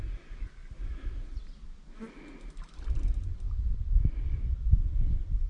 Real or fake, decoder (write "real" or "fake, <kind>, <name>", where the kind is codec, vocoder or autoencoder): real